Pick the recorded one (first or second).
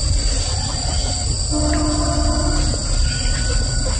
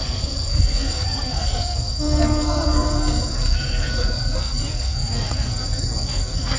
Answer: first